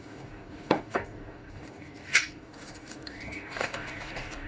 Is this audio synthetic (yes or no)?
yes